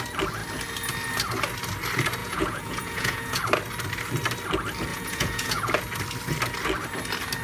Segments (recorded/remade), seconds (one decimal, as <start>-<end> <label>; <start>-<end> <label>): 0.0-2.2 recorded; 2.2-3.4 remade; 3.4-4.9 recorded; 4.9-5.7 remade; 5.7-7.4 recorded